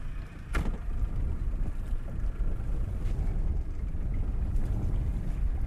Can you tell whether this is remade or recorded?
recorded